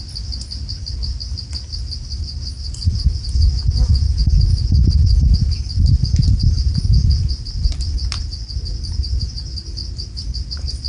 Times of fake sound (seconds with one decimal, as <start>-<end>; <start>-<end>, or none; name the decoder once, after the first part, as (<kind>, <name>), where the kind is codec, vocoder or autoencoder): 4.2-9.2 (vocoder, BigVGAN v2)